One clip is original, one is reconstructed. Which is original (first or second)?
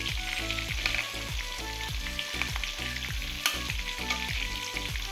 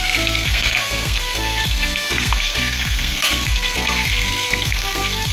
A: first